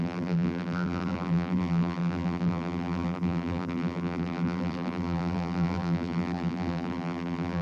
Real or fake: fake